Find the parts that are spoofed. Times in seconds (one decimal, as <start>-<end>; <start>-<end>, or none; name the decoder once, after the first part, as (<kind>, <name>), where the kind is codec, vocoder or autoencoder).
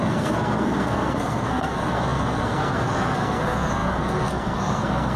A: 0.0-5.2 (codec, SNAC)